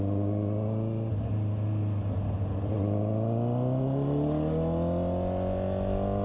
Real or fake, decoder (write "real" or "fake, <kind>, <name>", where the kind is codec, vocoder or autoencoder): real